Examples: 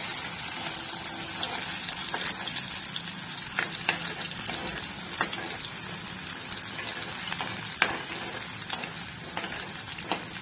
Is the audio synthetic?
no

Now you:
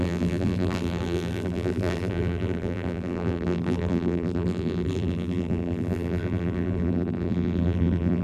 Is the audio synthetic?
yes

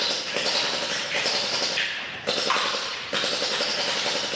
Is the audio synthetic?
yes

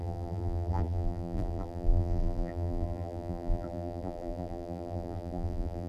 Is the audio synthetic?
yes